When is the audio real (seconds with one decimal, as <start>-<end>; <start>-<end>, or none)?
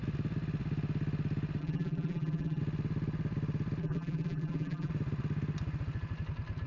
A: 0.0-1.6; 2.6-3.8; 4.9-6.7